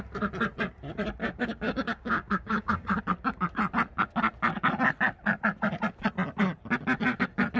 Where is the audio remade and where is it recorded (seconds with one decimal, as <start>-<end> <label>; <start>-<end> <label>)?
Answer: 0.0-1.2 recorded; 1.2-3.0 remade; 3.0-7.6 recorded